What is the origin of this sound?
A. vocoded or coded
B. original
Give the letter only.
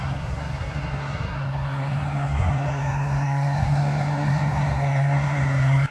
A